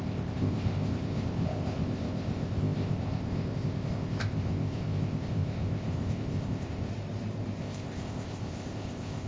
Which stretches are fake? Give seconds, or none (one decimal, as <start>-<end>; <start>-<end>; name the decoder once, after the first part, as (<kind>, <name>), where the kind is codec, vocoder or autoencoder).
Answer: 0.0-6.9 (codec, ZipCodec); 7.6-9.3